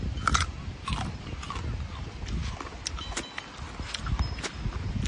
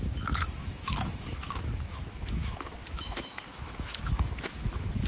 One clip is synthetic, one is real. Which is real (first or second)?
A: first